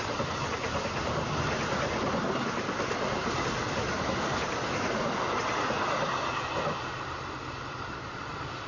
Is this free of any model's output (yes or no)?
yes